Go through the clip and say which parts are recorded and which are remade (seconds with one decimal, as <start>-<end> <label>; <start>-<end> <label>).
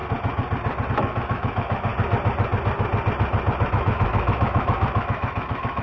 0.0-0.9 recorded; 0.9-1.9 remade; 1.9-3.7 recorded; 3.7-5.8 remade